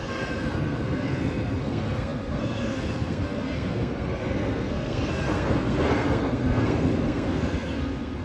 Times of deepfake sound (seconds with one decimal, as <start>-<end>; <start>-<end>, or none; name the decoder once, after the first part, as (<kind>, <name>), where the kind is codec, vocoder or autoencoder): 0.0-8.2 (codec, SNAC)